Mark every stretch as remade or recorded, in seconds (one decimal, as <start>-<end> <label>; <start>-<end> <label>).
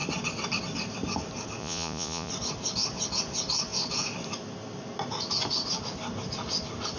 0.0-1.6 recorded; 1.6-2.3 remade; 2.3-7.0 recorded